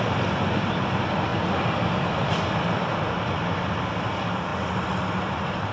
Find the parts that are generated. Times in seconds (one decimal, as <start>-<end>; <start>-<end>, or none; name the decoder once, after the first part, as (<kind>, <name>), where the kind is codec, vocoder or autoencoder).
0.0-1.3 (vocoder, BigVGAN v2); 1.9-2.9; 4.1-4.5; 5.3-5.7